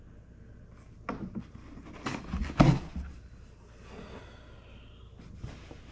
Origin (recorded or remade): recorded